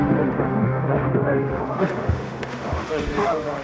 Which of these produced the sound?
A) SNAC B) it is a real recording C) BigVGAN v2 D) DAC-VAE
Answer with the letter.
D